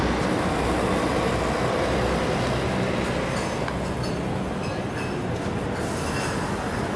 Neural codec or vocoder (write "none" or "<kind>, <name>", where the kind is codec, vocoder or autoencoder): none